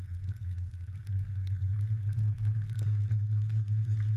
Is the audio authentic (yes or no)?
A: no